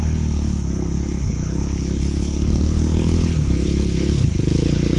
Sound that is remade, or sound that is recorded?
remade